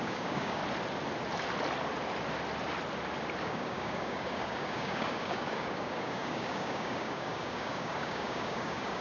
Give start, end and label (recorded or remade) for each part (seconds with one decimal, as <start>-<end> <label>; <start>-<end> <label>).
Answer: 0.0-0.6 remade; 0.6-3.4 recorded; 3.4-9.0 remade